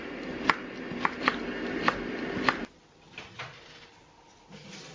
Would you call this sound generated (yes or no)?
no